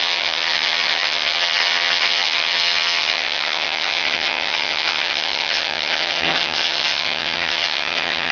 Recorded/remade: remade